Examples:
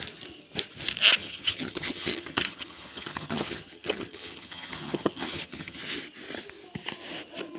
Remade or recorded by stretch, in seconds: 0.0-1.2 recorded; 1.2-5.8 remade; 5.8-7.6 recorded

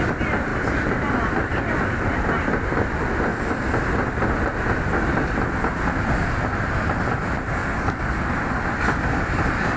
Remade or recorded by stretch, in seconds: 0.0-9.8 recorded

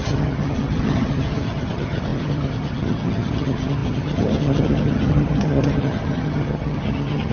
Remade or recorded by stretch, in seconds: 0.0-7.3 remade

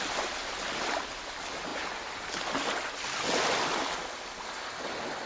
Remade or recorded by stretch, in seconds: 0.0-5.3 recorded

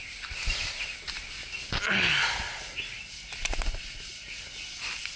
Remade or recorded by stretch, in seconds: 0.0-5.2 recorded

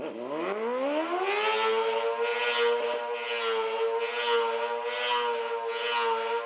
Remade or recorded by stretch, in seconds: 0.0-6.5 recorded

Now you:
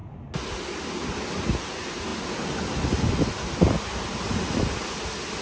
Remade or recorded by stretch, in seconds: 0.0-5.4 recorded